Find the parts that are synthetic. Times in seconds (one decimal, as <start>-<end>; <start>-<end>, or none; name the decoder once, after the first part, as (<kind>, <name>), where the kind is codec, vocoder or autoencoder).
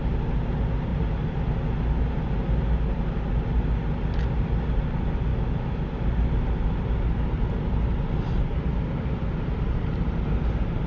5.3-5.9 (autoencoder, DAC-VAE)